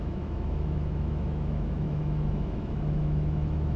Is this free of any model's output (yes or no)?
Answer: no